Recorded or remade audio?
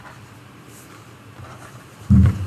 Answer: recorded